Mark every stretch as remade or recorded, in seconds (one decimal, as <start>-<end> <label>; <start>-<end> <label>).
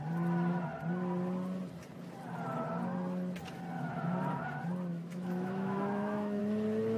0.0-4.9 recorded; 4.9-6.4 remade; 6.4-7.0 recorded